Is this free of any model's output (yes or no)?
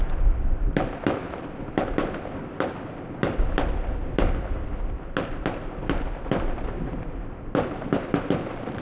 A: yes